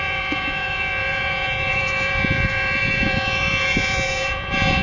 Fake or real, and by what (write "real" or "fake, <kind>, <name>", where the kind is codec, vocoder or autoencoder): fake, vocoder, Vocos